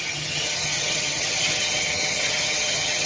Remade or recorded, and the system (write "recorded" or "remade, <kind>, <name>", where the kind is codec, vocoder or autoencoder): remade, vocoder, HiFi-GAN